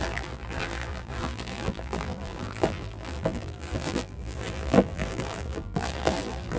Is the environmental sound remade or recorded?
remade